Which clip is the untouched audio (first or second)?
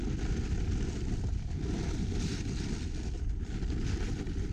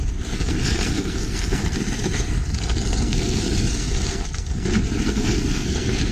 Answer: first